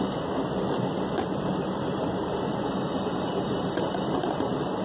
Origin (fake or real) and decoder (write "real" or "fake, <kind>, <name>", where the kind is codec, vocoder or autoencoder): real